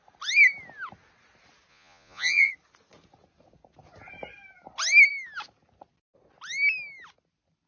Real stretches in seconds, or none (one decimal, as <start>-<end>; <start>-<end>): 0.0-1.7; 2.5-7.7